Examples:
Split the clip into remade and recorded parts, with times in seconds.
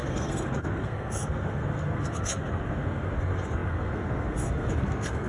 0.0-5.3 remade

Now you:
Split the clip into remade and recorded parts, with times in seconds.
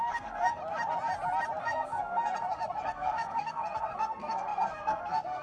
0.0-0.6 remade; 0.6-1.6 recorded; 1.6-5.4 remade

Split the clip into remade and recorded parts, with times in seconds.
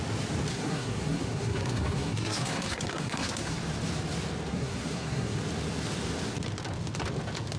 0.0-0.5 recorded; 0.5-3.6 remade; 3.6-4.5 recorded; 4.5-5.4 remade; 5.4-7.6 recorded